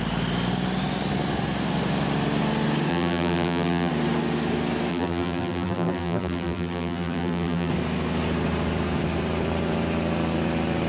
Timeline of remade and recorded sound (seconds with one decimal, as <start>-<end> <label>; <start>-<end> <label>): 0.0-2.9 recorded; 2.9-3.9 remade; 3.9-4.9 recorded; 4.9-7.7 remade; 7.7-10.9 recorded